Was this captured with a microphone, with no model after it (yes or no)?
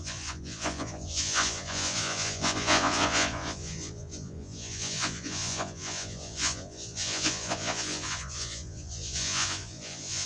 no